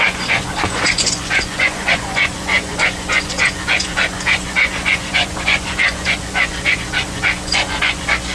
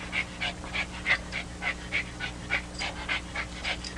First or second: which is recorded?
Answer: second